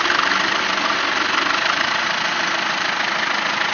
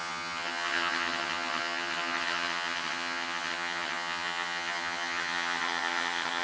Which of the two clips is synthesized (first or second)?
second